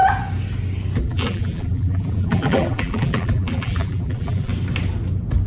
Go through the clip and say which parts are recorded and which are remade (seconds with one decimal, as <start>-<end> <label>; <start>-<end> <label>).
0.0-1.0 recorded; 1.0-4.5 remade; 4.5-5.5 recorded